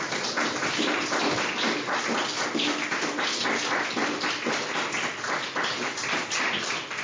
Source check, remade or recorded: recorded